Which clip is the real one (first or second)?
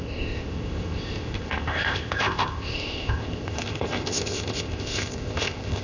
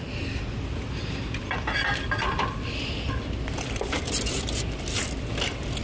second